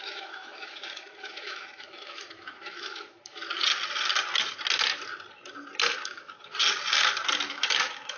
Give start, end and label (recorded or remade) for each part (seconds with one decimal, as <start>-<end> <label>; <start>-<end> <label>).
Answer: 0.0-3.4 remade; 3.4-5.9 recorded; 5.9-6.5 remade; 6.5-7.5 recorded; 7.5-8.2 remade